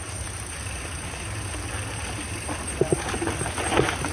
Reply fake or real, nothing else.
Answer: real